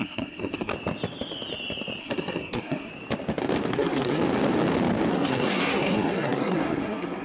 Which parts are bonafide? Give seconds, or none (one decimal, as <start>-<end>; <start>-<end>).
0.7-2.0; 2.9-3.7; 4.2-5.1